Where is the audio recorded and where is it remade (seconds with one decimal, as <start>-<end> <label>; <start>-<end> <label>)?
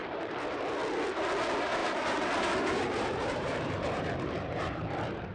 0.0-0.7 remade; 0.7-1.8 recorded; 1.8-5.3 remade